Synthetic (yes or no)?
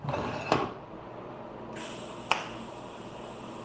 no